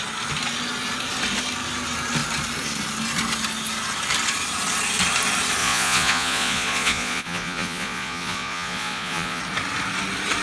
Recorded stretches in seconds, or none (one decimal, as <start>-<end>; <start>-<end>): 0.0-5.6; 9.4-10.4